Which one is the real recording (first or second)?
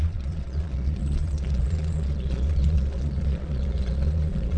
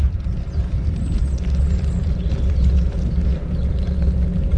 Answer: second